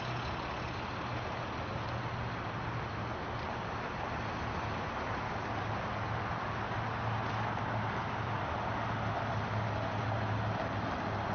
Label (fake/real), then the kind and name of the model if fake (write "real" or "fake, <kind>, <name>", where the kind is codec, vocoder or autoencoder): real